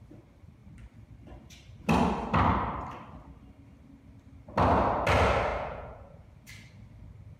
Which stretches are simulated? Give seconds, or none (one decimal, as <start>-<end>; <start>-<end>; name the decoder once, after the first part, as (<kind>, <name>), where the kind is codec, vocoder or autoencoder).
5.5-6.3 (vocoder, Vocos)